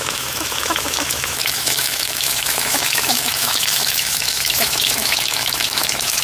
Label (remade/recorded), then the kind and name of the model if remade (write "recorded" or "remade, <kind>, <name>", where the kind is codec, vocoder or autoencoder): remade, autoencoder, DAC-VAE